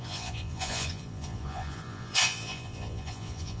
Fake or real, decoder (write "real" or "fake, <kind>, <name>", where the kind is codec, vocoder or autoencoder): fake, vocoder, Vocos